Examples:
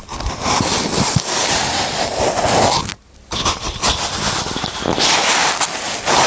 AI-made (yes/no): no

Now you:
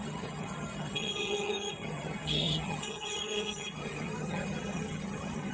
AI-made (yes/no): yes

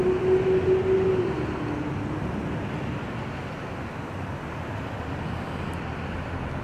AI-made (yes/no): no